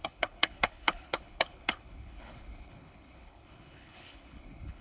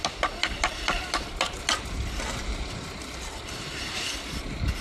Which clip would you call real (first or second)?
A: second